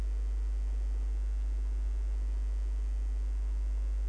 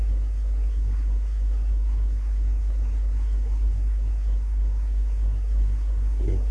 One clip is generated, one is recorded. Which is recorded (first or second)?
first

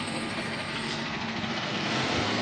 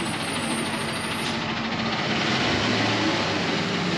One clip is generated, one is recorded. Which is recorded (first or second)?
second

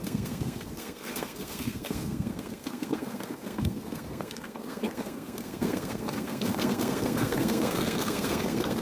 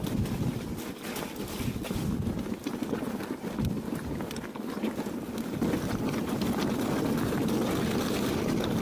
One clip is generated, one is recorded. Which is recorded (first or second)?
second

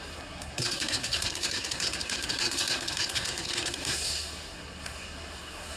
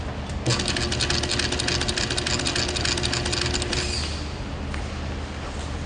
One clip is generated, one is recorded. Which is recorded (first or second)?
second